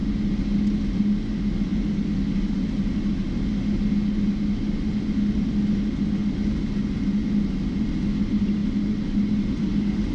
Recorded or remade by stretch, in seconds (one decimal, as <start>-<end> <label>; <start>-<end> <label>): 0.0-10.1 recorded